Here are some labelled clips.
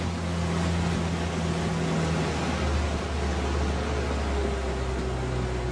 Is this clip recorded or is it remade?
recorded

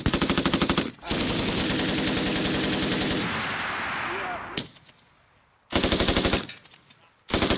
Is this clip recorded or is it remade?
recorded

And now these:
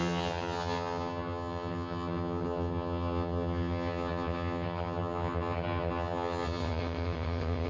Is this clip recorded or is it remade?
remade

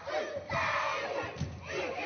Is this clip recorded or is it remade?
recorded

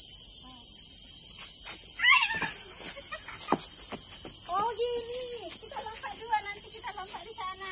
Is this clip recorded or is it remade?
recorded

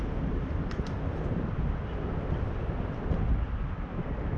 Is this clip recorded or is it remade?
recorded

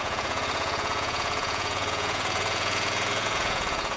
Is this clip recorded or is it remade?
remade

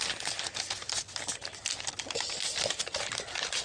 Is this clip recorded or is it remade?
recorded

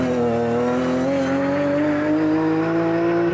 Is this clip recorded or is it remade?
recorded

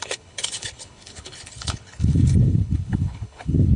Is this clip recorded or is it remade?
remade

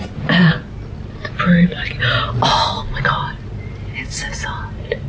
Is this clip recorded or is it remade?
recorded